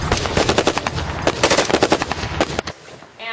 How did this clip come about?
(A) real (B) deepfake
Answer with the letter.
A